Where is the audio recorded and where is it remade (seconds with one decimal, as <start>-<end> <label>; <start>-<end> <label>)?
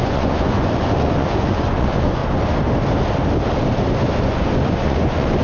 0.0-2.2 remade; 2.2-4.2 recorded; 4.2-5.4 remade